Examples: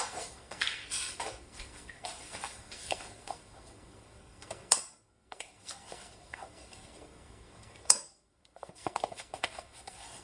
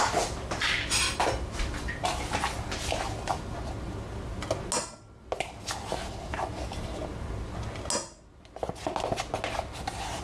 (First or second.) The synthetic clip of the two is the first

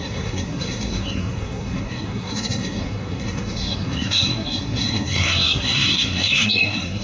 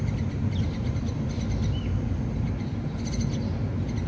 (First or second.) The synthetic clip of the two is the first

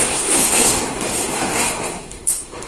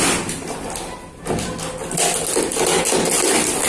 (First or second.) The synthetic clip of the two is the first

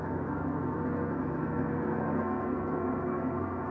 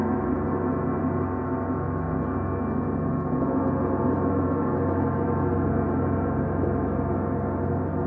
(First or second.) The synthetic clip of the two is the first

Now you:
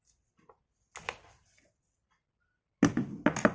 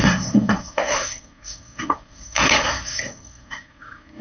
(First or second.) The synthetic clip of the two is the second